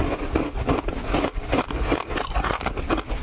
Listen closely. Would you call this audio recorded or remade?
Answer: recorded